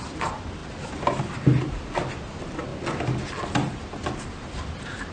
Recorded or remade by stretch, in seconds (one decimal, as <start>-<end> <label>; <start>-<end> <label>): 0.0-5.1 recorded